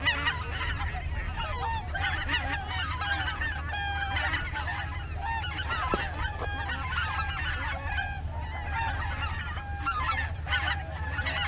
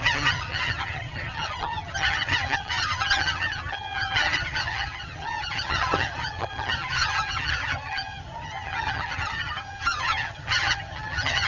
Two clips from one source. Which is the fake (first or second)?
second